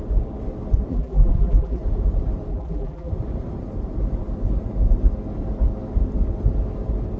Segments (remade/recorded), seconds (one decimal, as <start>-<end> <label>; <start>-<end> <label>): 0.0-0.9 recorded; 0.9-1.8 remade; 1.8-2.5 recorded; 2.5-3.1 remade; 3.1-7.2 recorded